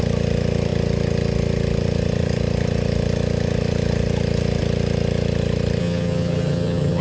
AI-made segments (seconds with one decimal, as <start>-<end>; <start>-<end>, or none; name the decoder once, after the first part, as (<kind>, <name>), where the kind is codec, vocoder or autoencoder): 5.8-7.0 (vocoder, HiFi-GAN)